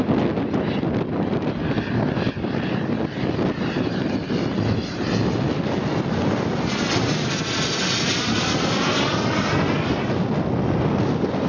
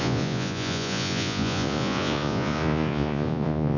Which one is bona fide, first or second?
first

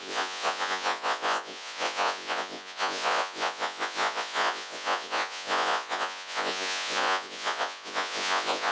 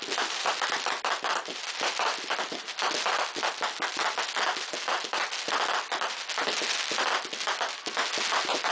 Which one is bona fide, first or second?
second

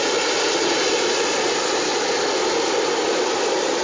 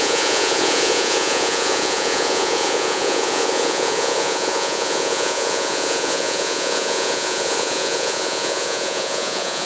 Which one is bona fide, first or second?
first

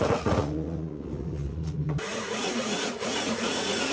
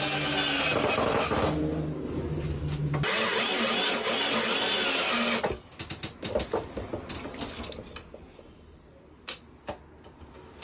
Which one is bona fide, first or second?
second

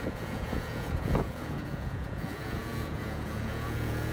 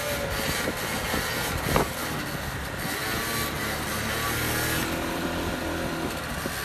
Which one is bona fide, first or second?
second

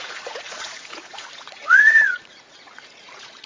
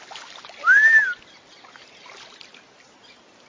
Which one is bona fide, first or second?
second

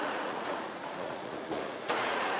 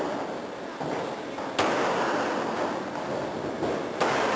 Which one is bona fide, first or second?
second